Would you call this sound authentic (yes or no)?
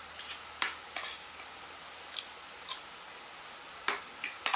yes